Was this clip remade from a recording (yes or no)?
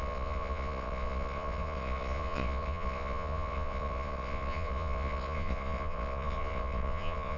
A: yes